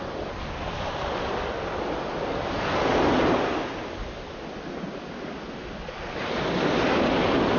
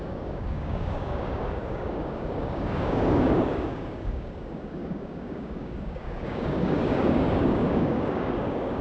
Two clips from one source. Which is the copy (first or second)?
second